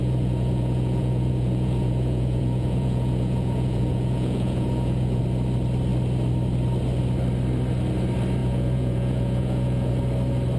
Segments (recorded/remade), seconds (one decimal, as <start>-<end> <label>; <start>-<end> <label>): 0.0-5.2 remade; 5.2-8.4 recorded; 8.4-9.9 remade; 9.9-10.6 recorded